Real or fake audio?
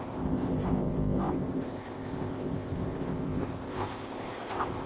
fake